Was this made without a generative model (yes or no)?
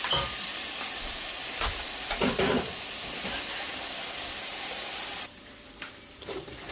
no